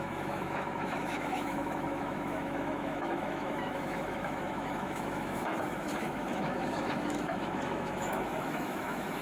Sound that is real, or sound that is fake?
fake